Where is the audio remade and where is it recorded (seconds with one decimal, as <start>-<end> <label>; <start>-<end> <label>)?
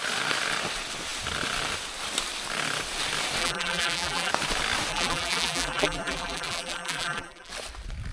0.0-3.4 recorded; 3.4-4.3 remade; 4.3-4.9 recorded; 4.9-7.5 remade; 7.5-8.1 recorded